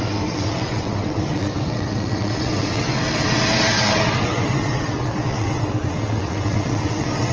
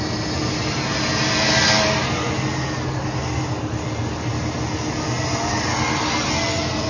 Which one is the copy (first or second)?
first